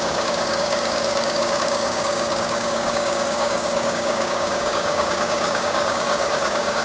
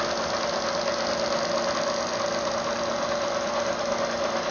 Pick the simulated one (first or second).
first